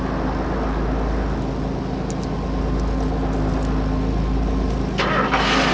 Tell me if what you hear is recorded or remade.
recorded